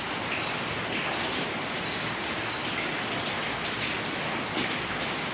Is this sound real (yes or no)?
yes